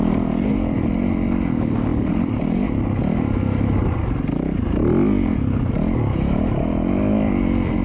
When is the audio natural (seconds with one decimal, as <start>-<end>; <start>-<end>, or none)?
0.0-7.8